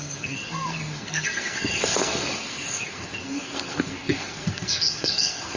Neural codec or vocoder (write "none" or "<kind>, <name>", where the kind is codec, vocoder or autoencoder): codec, SNAC